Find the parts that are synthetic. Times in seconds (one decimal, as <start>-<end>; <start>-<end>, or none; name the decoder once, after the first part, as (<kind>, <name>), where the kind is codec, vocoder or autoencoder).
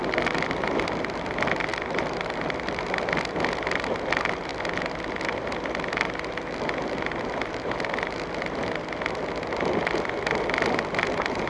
1.7-2.8 (vocoder, BigVGAN v2)